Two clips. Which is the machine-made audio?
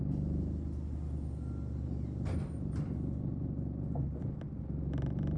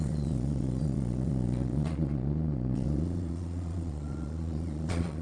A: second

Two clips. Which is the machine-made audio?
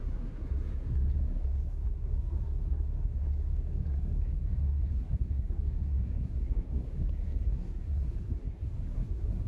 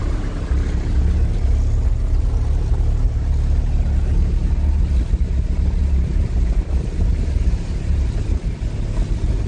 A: first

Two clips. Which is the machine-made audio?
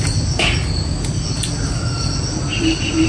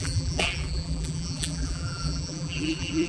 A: second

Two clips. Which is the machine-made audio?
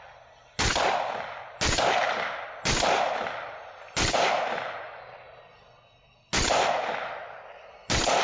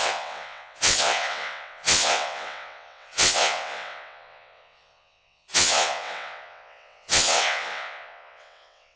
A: second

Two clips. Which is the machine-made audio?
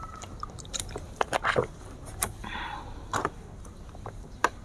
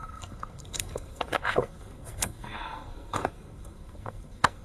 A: second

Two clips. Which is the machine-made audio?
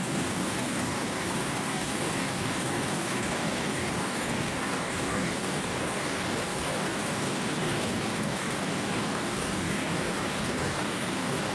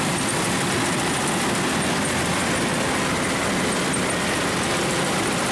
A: first